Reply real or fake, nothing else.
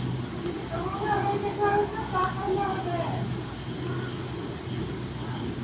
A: real